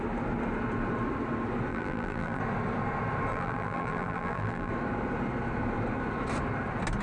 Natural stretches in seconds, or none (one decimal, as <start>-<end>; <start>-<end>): 0.0-1.7; 2.4-3.3; 4.7-7.0